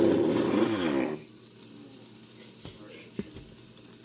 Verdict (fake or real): real